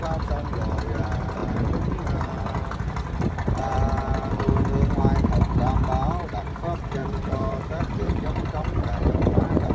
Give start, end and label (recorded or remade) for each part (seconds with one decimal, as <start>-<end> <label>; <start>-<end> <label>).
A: 0.0-7.0 recorded; 7.0-8.1 remade; 8.1-9.7 recorded